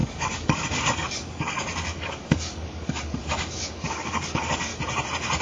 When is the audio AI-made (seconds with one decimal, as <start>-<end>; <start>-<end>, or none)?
0.0-4.7

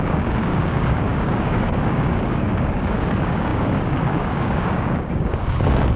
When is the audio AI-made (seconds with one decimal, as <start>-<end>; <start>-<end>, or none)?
0.0-6.0

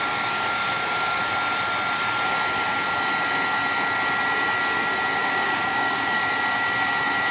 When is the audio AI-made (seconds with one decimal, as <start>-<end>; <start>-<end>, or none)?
0.0-1.2; 5.2-6.2

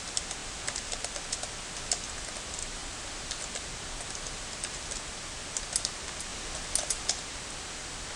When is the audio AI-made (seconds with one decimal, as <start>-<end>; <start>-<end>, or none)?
none

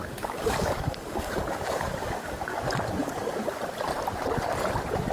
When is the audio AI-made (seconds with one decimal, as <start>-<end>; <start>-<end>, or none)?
0.0-2.6; 3.0-3.6

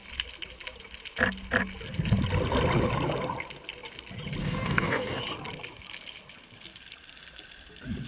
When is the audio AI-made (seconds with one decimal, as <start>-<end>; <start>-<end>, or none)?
4.4-5.2